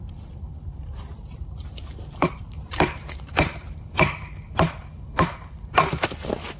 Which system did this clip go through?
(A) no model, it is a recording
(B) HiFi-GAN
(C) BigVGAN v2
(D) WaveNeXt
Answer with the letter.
C